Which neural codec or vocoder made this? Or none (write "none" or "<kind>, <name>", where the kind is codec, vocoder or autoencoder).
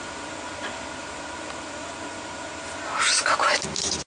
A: none